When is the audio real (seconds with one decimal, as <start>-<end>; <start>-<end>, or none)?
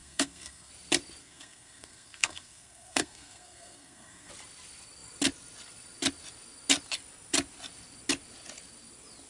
0.7-1.2; 4.3-9.3